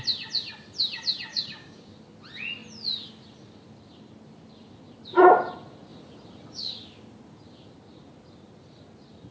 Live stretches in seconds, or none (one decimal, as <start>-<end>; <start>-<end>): 0.0-1.3; 1.9-9.3